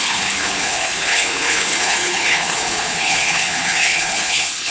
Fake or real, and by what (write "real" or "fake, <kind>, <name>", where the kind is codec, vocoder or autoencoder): fake, codec, HILCodec